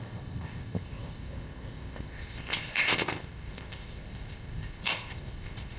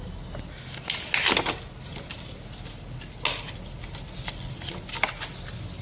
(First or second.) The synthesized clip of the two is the first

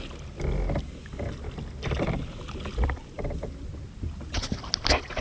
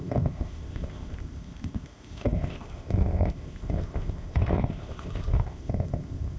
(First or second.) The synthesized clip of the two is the second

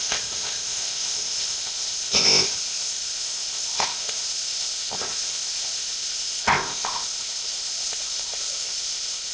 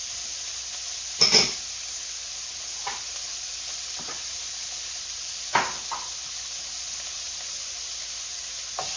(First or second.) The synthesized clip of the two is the first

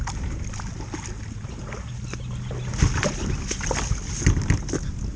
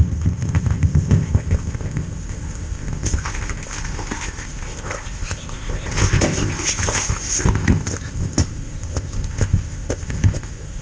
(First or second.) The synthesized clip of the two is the second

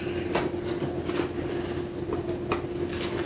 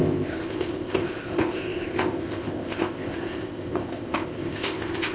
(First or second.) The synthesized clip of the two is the second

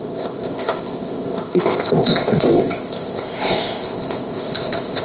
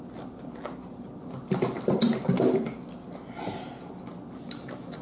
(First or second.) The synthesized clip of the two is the first